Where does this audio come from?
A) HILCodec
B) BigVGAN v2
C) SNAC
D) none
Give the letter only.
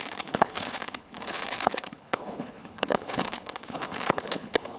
A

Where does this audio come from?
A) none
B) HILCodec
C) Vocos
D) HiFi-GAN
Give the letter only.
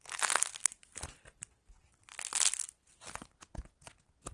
A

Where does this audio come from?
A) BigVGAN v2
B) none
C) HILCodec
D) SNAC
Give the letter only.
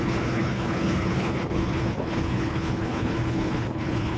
C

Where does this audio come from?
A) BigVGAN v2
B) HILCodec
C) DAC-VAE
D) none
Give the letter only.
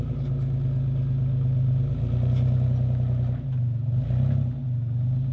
D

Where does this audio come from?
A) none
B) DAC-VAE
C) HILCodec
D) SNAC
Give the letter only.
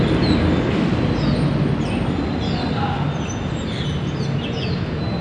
A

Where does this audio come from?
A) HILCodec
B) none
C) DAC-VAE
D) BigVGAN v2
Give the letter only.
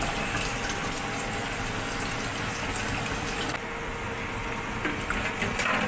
B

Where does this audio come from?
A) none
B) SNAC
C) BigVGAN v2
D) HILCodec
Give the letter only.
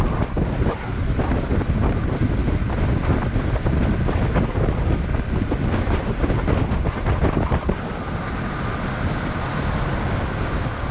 A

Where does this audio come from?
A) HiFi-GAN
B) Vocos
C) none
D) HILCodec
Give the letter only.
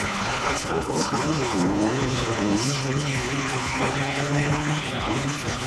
D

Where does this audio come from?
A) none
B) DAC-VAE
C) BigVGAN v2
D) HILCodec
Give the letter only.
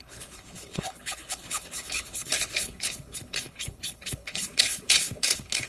D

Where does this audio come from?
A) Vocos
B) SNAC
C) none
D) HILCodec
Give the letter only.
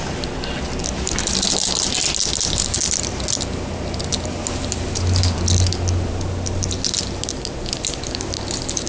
C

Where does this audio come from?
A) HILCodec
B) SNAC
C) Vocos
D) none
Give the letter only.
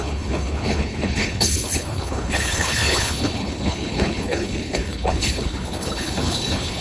A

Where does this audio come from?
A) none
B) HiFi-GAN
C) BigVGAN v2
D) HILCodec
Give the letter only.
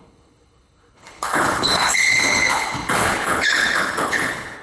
D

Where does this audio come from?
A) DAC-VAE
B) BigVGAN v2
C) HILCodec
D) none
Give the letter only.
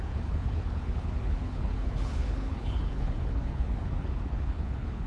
C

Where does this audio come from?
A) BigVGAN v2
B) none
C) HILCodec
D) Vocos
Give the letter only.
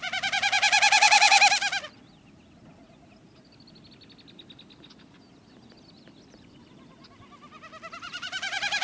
B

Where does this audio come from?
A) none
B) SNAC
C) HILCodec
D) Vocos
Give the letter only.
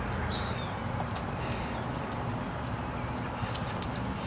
A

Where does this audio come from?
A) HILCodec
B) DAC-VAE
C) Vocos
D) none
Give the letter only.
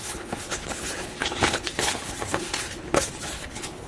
A